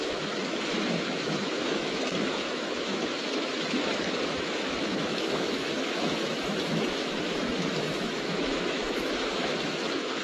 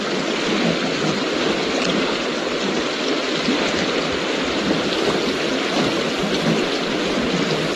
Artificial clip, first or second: first